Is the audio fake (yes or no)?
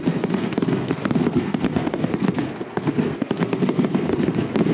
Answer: yes